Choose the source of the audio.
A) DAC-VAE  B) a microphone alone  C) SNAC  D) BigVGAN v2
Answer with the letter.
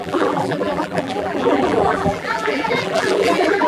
D